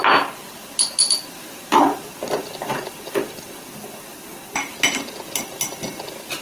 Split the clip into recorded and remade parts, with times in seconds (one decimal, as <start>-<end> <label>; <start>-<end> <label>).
0.0-2.4 recorded; 2.4-4.7 remade; 4.7-6.4 recorded